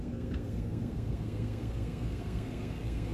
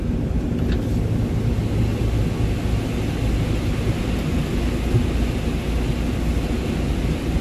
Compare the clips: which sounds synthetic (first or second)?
first